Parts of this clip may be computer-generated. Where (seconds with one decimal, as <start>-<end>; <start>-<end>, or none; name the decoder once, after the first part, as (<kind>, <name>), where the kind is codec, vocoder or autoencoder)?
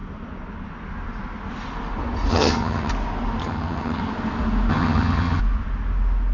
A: 2.3-2.9 (vocoder, HiFi-GAN); 3.4-4.0; 4.7-5.4